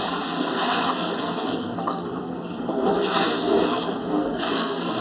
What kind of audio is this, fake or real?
fake